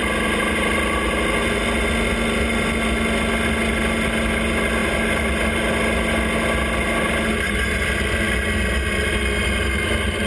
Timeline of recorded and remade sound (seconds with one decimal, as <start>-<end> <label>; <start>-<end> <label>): 0.0-10.3 recorded